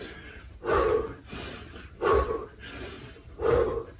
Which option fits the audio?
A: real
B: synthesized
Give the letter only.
A